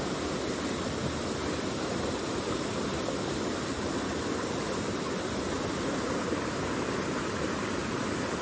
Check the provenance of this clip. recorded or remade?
recorded